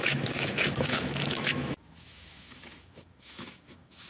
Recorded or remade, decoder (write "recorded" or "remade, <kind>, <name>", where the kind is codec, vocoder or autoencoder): remade, autoencoder, DAC-VAE